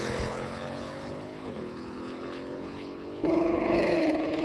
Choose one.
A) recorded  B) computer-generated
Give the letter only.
B